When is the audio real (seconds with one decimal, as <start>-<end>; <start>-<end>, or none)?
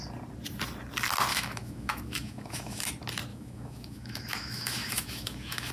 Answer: 0.0-1.3; 2.9-3.3